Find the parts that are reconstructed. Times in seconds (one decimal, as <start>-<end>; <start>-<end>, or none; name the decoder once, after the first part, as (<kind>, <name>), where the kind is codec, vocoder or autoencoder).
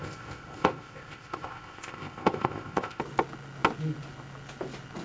0.0-3.0 (codec, ZipCodec)